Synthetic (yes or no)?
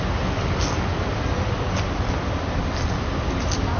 no